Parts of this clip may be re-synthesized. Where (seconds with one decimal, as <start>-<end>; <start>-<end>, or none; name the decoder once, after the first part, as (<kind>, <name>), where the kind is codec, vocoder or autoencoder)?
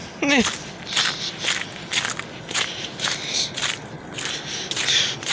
none